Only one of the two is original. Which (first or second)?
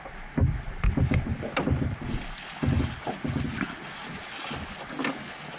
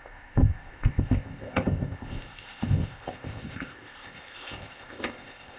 first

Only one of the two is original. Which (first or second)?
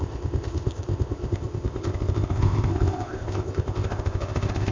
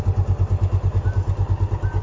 second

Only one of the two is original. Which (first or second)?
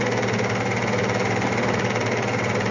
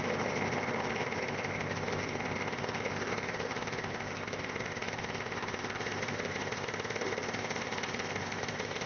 first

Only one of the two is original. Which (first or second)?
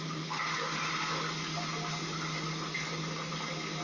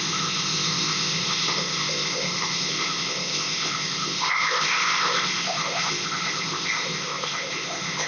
first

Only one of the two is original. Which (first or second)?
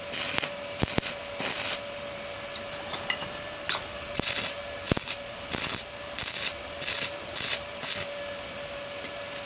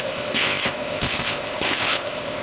first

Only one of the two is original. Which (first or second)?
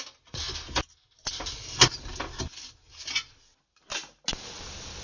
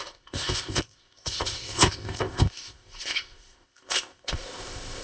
first